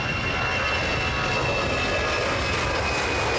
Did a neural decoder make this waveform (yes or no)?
no